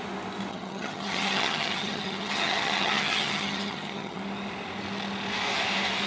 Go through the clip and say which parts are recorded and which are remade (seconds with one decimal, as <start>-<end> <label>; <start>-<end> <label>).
0.0-0.5 recorded; 0.5-4.2 remade; 4.2-6.1 recorded